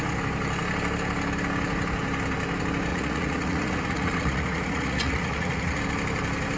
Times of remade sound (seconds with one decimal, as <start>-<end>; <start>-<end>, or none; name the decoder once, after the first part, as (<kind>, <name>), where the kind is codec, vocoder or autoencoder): 2.9-5.8 (vocoder, Vocos)